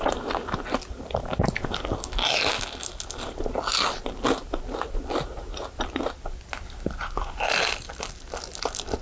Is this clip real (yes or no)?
yes